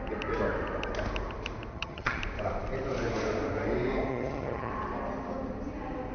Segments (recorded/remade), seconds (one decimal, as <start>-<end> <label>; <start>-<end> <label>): 0.0-1.7 recorded; 1.7-2.2 remade; 2.2-4.1 recorded; 4.1-4.7 remade; 4.7-6.1 recorded